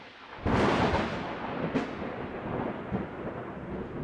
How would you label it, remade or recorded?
recorded